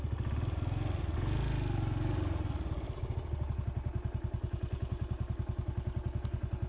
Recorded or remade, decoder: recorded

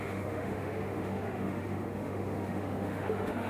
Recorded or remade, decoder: remade, autoencoder, DAC-VAE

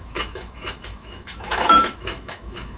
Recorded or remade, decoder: remade, autoencoder, DAC-VAE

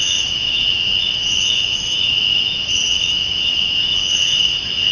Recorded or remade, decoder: remade, autoencoder, DAC-VAE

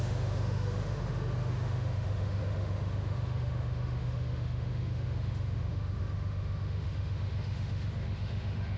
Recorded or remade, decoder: remade, autoencoder, DAC-VAE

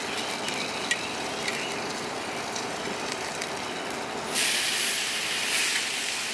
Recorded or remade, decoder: recorded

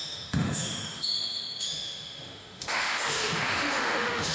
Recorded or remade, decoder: remade, autoencoder, DAC-VAE